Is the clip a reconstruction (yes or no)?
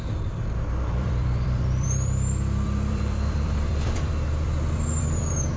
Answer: yes